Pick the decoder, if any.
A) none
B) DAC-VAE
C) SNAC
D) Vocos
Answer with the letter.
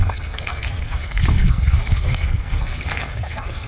C